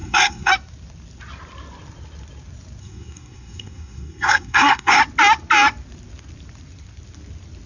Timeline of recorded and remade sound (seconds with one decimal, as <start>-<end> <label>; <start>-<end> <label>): 0.0-0.5 remade; 0.5-2.8 recorded; 2.8-5.0 remade; 5.0-7.7 recorded